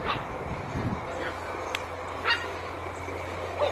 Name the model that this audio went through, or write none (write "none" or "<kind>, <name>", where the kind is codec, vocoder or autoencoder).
none